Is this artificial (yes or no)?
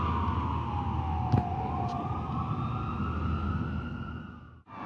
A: no